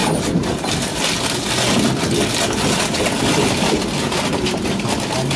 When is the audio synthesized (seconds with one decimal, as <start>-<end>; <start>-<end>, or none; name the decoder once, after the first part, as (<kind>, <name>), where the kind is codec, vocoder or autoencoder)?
3.2-5.4 (vocoder, BigVGAN v2)